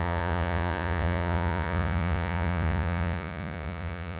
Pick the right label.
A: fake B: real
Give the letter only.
A